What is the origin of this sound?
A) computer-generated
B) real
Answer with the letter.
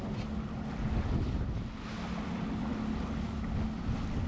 B